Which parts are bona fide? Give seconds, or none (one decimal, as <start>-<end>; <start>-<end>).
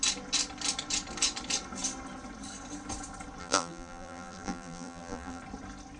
0.0-3.4; 5.4-6.0